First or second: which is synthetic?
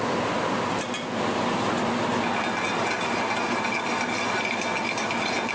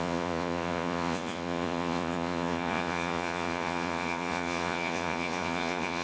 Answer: second